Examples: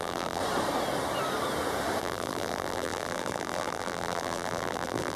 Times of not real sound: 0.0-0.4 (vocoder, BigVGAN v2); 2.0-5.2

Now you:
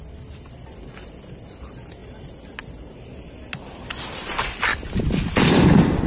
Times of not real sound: none

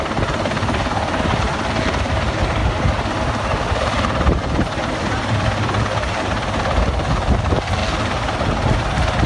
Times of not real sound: 0.0-2.6 (vocoder, BigVGAN v2); 3.7-7.8

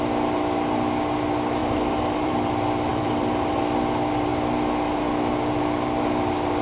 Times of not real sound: 1.6-2.5 (vocoder, BigVGAN v2); 2.9-3.6

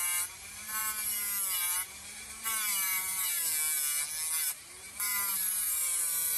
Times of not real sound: 0.0-0.8 (vocoder, BigVGAN v2); 1.6-3.4; 4.5-6.4